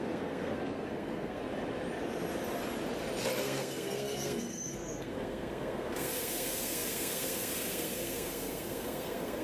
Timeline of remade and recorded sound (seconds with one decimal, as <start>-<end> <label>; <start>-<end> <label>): 0.0-1.4 remade; 1.4-3.4 recorded; 3.4-9.4 remade